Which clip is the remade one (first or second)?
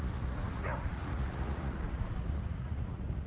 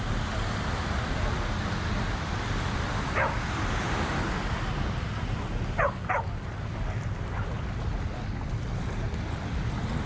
first